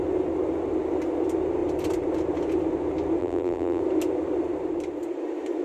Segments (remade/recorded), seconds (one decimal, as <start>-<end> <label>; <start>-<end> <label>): 0.0-3.2 recorded; 3.2-3.8 remade; 3.8-5.6 recorded